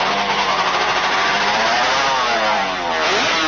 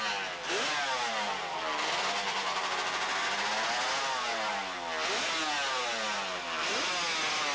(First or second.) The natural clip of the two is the second